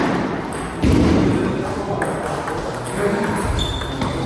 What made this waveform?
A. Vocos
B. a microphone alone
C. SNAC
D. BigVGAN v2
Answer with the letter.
B